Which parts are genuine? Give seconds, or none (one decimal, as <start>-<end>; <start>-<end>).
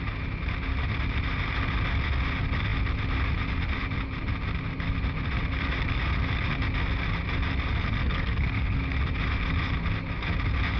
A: 0.0-7.8; 8.8-10.8